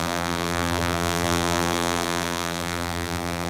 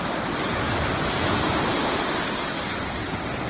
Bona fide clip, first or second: second